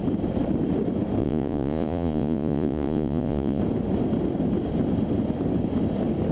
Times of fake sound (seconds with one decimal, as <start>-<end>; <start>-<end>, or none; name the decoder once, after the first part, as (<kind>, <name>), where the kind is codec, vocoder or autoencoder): 1.2-3.6 (vocoder, Vocos)